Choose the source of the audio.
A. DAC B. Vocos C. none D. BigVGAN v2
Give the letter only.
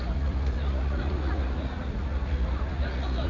B